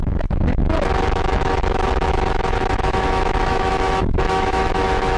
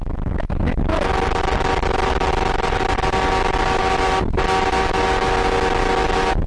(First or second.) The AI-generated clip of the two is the first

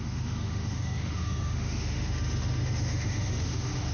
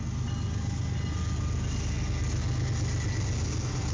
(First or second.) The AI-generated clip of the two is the first